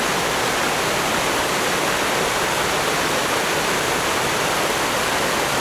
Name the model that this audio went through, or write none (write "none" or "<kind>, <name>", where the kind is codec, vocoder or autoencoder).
none